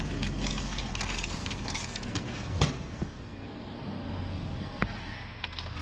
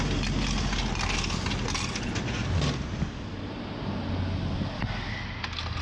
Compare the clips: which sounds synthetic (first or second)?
first